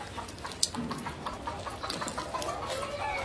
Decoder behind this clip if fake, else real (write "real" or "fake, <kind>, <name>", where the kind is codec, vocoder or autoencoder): real